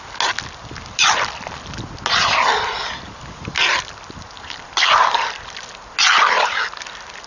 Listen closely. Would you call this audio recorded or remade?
recorded